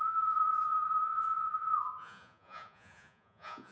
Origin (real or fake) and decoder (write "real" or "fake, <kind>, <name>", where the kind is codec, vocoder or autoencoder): fake, vocoder, Vocos